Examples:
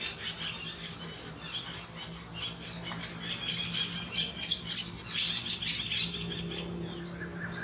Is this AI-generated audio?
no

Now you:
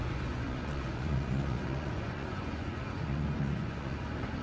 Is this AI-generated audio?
yes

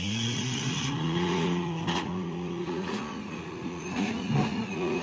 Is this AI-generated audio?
yes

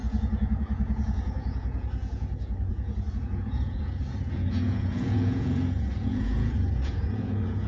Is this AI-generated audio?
yes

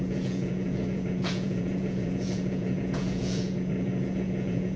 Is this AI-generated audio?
yes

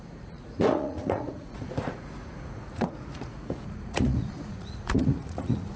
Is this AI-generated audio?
yes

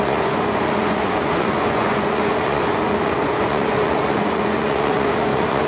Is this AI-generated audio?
yes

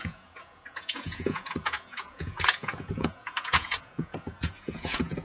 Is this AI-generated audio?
yes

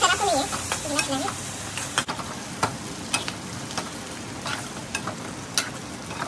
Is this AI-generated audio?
no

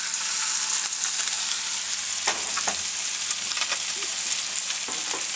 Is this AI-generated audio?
no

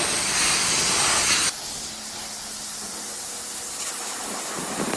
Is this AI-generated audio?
no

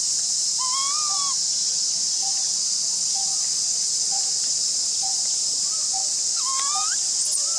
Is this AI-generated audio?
no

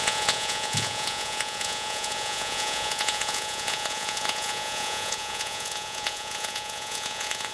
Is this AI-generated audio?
yes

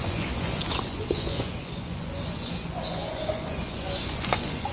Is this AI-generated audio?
yes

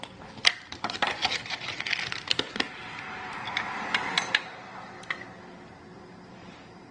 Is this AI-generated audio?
no